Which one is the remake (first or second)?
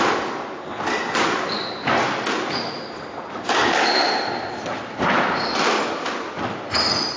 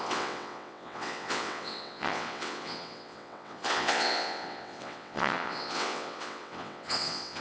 second